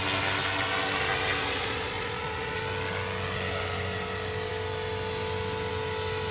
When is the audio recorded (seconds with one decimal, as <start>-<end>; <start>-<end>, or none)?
0.0-1.4; 2.6-6.3

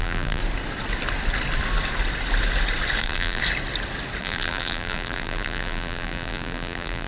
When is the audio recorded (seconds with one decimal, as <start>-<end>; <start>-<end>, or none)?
0.4-3.0; 3.4-4.2

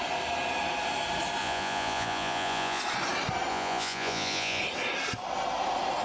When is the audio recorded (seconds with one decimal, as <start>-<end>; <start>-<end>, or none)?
0.0-1.4; 2.8-3.5; 4.6-6.0

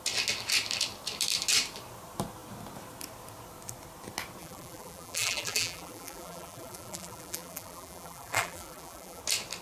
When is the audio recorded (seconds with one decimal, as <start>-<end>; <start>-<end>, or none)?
0.0-4.4; 9.2-9.6